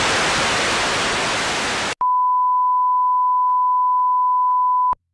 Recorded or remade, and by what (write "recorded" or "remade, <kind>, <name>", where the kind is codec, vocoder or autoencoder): recorded